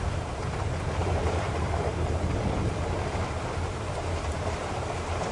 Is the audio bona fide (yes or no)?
no